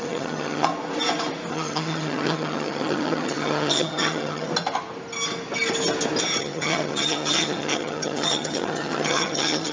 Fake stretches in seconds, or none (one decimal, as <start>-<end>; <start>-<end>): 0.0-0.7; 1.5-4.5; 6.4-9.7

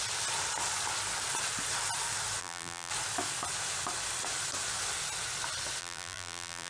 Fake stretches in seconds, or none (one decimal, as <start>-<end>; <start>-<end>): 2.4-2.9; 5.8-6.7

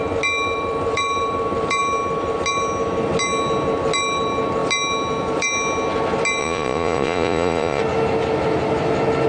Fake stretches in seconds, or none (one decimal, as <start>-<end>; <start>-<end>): 6.4-7.8

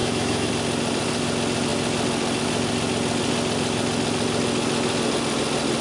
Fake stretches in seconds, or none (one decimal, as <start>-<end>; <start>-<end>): 0.0-0.5